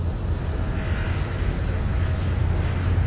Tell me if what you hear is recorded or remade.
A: recorded